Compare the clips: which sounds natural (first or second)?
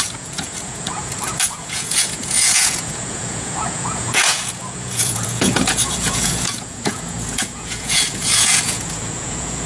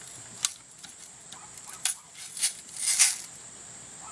second